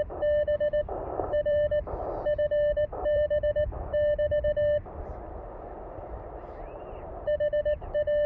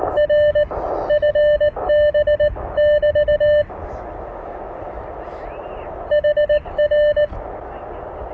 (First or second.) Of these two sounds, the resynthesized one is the first